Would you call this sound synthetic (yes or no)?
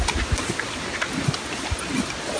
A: no